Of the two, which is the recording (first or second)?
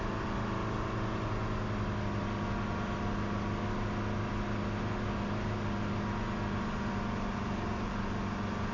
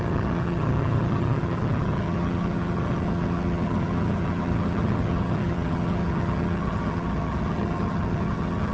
first